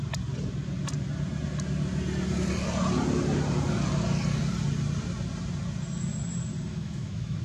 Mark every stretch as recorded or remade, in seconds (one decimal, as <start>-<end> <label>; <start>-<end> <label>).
0.0-6.7 recorded; 6.7-7.4 remade